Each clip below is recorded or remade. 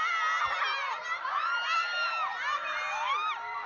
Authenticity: recorded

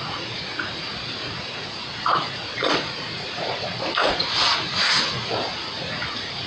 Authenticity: remade